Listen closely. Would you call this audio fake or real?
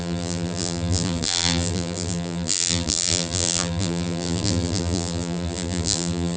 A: fake